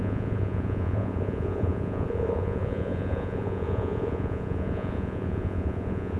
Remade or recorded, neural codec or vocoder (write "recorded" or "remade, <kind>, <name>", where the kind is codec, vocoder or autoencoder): remade, vocoder, Vocos